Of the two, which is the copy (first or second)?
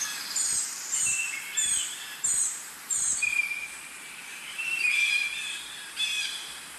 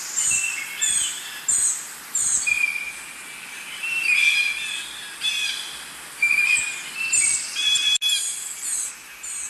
first